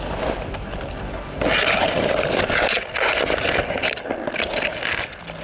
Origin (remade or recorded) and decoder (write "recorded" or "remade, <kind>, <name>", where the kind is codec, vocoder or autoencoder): recorded